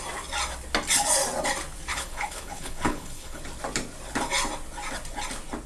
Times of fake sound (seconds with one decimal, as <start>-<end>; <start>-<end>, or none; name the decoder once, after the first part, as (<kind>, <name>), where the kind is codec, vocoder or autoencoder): 1.9-3.4 (codec, HILCodec)

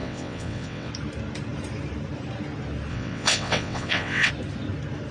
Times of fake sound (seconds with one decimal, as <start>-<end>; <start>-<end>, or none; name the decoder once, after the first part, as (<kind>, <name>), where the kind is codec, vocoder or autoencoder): 0.0-0.9 (vocoder, WaveNeXt); 2.9-4.3

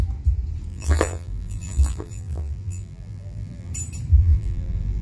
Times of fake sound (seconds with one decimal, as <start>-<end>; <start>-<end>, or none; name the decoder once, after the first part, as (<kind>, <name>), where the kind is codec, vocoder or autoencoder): 0.7-3.7 (vocoder, BigVGAN v2); 4.2-5.0